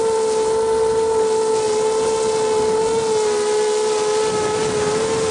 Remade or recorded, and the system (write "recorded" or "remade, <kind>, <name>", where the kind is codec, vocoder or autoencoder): recorded